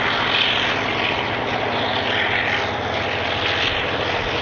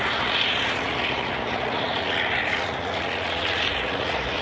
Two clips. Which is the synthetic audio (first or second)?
second